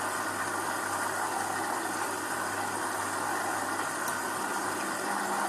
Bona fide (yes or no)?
yes